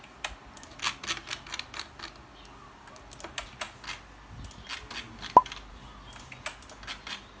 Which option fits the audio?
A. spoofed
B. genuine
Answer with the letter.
B